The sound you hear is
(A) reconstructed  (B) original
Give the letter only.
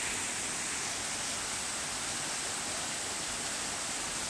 B